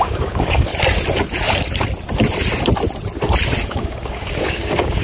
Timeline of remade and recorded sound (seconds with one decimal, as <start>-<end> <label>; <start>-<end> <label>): 0.0-0.7 remade; 0.7-3.7 recorded; 3.7-5.0 remade